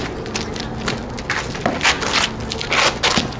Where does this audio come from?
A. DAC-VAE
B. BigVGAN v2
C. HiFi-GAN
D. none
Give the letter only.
D